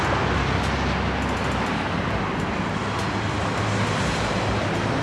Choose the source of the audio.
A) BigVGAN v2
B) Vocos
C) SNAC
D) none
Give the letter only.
D